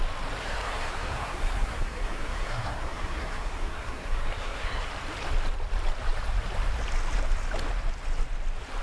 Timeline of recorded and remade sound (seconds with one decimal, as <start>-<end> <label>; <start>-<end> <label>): 0.0-0.4 recorded; 0.4-4.9 remade; 4.9-8.8 recorded